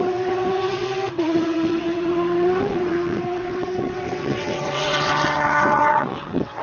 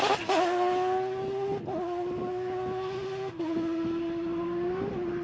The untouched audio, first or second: second